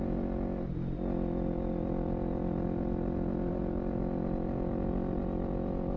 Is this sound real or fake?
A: real